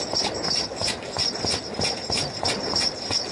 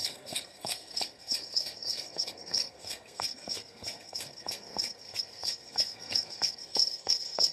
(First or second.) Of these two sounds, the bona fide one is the first